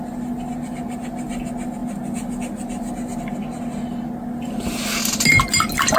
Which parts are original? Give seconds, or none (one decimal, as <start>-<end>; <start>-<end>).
0.0-6.0